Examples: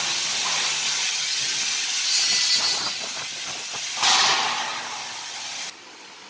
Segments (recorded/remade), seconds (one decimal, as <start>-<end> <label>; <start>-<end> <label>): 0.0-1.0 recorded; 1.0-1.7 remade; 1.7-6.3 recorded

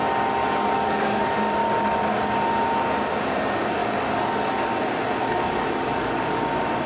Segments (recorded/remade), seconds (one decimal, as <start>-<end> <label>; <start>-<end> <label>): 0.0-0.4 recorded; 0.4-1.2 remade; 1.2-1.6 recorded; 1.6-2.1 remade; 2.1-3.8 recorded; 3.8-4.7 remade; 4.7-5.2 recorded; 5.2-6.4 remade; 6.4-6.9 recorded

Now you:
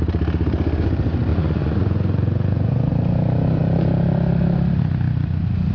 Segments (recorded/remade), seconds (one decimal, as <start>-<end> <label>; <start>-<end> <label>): 0.0-1.3 recorded; 1.3-2.9 remade; 2.9-5.7 recorded

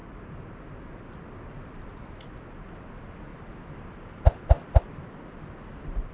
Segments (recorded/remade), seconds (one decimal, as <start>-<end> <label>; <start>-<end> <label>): 0.0-3.3 recorded; 3.3-4.8 remade; 4.8-6.1 recorded